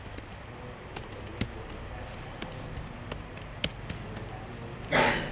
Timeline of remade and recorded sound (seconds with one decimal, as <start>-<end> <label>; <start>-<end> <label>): 0.0-5.3 recorded